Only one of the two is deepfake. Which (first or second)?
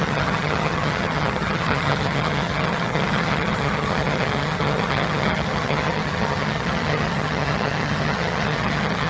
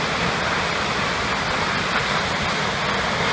first